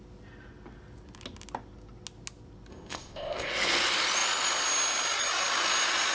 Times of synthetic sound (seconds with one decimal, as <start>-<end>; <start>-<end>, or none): 2.7-3.5